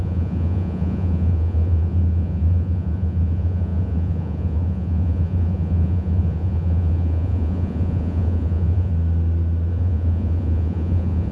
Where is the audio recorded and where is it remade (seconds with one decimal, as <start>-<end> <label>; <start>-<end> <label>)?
0.0-8.9 remade; 8.9-9.7 recorded; 9.7-11.3 remade